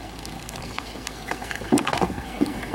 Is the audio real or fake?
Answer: fake